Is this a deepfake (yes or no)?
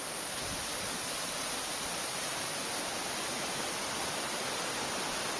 no